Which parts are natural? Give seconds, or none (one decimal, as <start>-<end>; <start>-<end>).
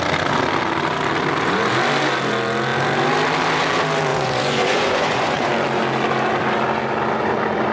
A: 0.0-4.1; 5.5-7.7